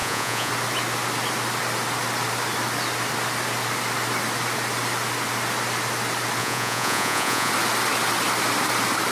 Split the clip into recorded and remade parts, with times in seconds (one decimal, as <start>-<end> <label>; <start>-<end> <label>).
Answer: 0.0-0.5 remade; 0.5-6.4 recorded; 6.4-7.5 remade; 7.5-9.1 recorded